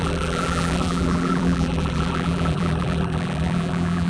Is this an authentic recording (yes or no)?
no